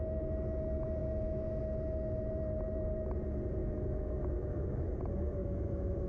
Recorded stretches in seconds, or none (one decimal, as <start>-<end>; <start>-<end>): 0.0-1.0; 1.6-3.6; 4.9-5.4